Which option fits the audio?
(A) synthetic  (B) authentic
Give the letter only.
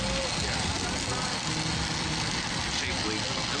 B